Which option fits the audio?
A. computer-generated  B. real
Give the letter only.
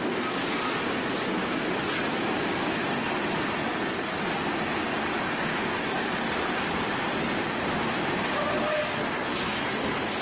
B